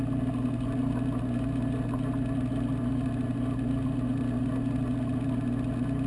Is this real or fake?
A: real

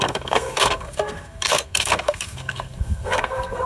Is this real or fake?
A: fake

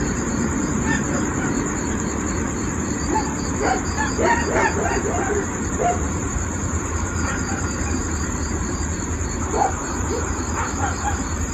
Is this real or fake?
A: fake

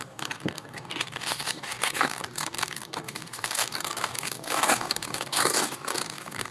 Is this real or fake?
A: fake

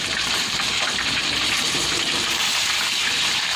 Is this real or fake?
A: fake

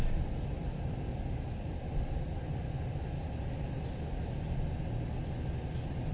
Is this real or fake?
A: real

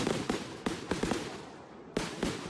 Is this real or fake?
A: real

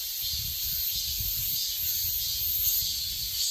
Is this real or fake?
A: real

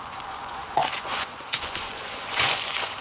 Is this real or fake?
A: fake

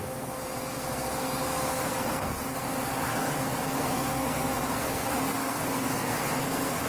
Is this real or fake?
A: fake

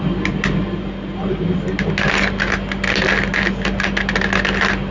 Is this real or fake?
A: real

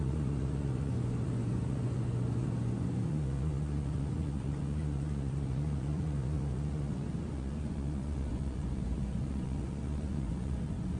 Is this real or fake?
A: fake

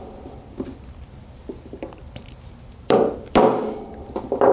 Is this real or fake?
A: real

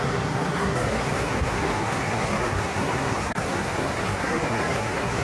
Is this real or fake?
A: fake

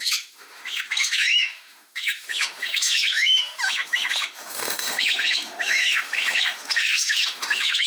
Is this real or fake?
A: fake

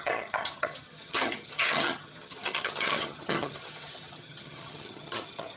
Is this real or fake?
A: fake